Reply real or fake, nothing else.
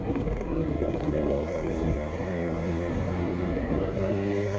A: fake